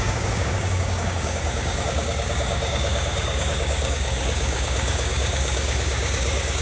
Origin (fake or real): fake